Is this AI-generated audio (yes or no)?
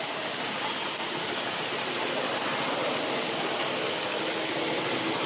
no